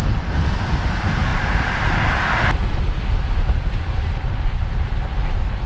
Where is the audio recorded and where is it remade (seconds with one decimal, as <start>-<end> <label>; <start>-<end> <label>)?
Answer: 0.0-5.7 recorded